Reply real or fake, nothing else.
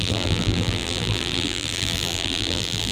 fake